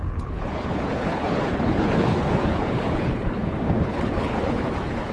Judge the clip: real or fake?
fake